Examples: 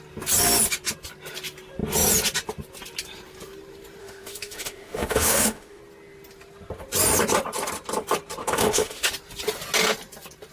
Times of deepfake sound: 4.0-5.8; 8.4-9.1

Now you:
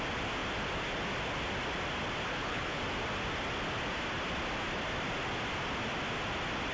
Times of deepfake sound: 2.3-2.8

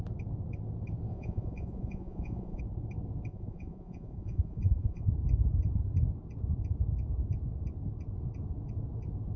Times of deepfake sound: 1.1-2.6; 3.3-5.1

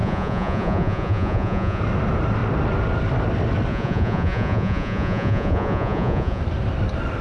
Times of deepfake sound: 0.0-1.8; 3.7-6.4

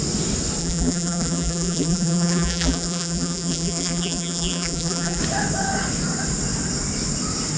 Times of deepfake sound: 0.6-5.2

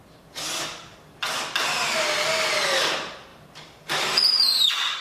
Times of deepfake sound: none

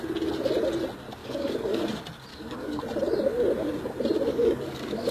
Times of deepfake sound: 1.2-1.8; 2.3-2.8; 4.3-5.1

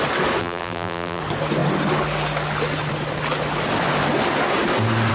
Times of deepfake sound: 0.4-1.2